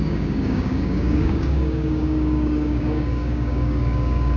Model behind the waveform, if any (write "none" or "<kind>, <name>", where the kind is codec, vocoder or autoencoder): codec, DAC